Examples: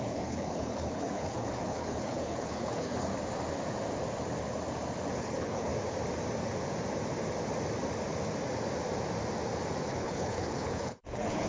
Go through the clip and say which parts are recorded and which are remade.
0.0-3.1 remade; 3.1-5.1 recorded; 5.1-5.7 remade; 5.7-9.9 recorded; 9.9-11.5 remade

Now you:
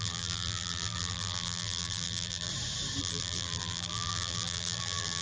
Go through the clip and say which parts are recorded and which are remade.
0.0-2.5 remade; 2.5-3.0 recorded; 3.0-5.2 remade

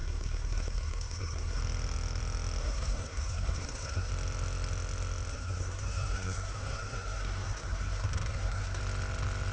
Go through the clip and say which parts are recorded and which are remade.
0.0-1.6 remade; 1.6-2.6 recorded; 2.6-4.1 remade; 4.1-5.3 recorded; 5.3-8.8 remade; 8.8-9.5 recorded

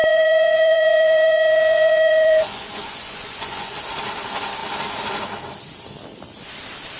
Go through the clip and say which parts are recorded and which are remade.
0.0-3.8 remade; 3.8-7.0 recorded